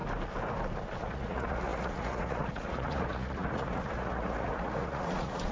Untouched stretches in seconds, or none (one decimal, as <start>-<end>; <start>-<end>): 0.0-1.0